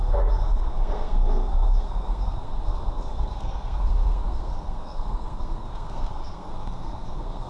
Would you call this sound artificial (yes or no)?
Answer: yes